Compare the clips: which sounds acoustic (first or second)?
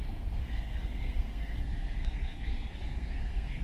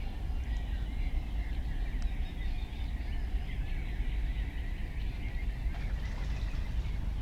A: second